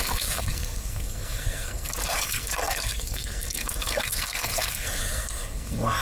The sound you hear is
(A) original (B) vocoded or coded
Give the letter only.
B